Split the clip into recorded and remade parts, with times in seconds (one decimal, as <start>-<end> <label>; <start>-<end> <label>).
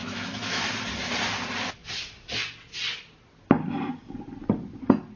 0.0-0.6 remade; 0.6-5.2 recorded